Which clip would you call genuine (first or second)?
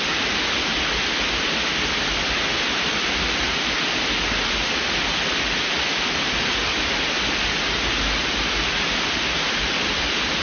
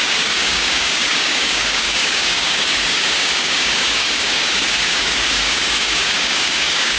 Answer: first